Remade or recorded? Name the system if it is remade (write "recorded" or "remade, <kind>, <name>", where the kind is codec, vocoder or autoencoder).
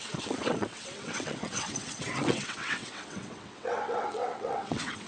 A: remade, vocoder, WaveNeXt